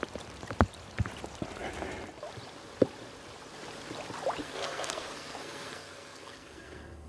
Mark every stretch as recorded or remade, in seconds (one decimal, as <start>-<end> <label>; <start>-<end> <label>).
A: 0.0-4.4 recorded; 4.4-7.1 remade

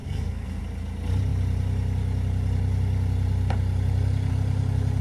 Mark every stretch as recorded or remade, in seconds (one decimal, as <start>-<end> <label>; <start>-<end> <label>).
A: 0.0-0.6 remade; 0.6-5.0 recorded

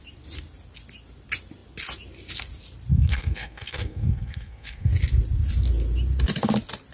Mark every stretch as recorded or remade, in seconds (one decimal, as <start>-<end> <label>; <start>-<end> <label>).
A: 0.0-2.9 recorded; 2.9-4.9 remade; 4.9-6.9 recorded

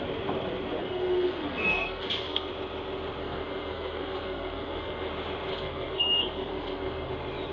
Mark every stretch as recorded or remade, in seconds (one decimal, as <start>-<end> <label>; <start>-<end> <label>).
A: 0.0-0.8 recorded; 0.8-2.5 remade; 2.5-3.2 recorded; 3.2-5.1 remade; 5.1-5.5 recorded; 5.5-7.1 remade; 7.1-7.5 recorded

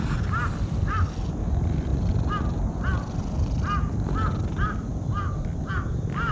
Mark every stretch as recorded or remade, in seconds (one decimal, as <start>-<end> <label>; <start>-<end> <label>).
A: 0.0-6.3 recorded

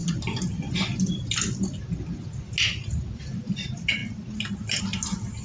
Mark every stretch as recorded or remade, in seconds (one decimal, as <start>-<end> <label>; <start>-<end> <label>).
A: 0.0-5.4 recorded